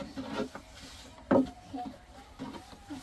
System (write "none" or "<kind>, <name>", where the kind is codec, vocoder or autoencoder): none